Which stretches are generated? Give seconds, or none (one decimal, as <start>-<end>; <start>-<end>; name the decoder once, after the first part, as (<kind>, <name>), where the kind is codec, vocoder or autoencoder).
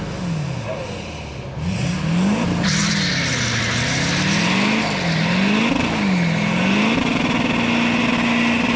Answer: none